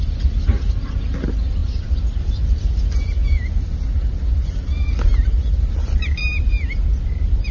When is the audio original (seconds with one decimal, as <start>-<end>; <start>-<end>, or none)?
0.0-7.5